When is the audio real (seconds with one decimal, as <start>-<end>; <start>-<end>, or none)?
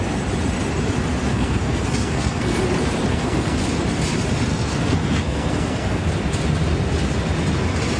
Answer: 0.0-1.3; 2.6-3.1; 3.6-4.5; 6.1-8.0